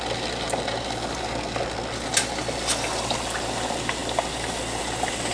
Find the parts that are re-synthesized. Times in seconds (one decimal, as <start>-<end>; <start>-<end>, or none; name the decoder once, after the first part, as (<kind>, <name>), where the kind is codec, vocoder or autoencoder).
none

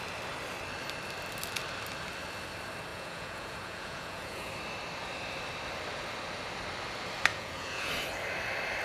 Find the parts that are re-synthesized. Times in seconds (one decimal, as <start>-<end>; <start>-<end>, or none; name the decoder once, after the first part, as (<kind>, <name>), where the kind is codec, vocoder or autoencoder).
2.9-4.5 (vocoder, Vocos); 7.3-7.9

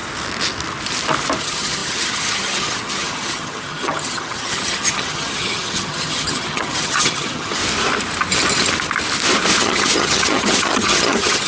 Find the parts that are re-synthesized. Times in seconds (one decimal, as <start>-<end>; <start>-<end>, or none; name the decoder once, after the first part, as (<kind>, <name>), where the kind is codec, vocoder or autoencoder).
1.4-7.6 (vocoder, HiFi-GAN); 9.6-11.5

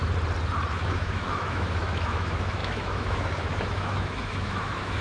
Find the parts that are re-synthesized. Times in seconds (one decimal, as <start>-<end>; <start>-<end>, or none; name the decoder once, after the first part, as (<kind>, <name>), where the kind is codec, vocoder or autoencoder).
0.7-5.0 (autoencoder, DAC-VAE)

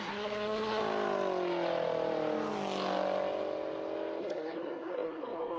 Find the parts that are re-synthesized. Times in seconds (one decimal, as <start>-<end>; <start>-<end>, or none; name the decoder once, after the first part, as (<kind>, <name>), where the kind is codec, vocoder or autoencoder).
0.0-0.8 (codec, SNAC); 4.2-5.6

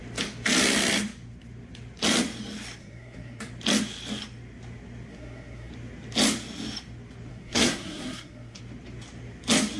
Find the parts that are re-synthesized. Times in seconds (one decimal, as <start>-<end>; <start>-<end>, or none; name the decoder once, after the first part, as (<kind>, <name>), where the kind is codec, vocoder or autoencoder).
2.8-3.5 (codec, SNAC); 5.1-5.7; 7.3-8.6

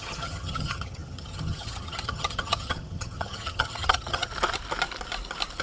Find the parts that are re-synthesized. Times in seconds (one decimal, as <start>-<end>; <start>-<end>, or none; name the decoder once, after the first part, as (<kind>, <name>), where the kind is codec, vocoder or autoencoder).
0.0-4.3 (vocoder, HiFi-GAN)